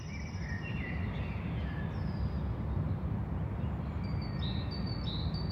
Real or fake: real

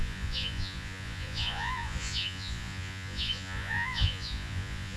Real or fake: fake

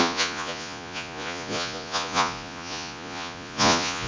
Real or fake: fake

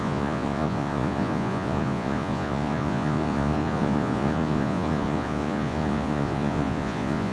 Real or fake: fake